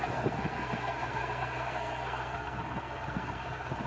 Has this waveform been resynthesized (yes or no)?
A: yes